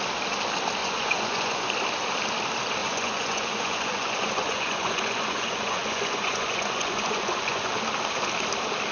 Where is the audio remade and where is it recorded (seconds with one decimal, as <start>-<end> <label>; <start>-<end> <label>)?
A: 0.0-0.8 recorded; 0.8-1.7 remade; 1.7-2.8 recorded; 2.8-7.7 remade; 7.7-8.9 recorded